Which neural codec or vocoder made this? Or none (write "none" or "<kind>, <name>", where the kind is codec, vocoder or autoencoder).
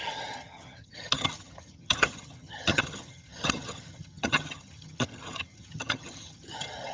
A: vocoder, HiFi-GAN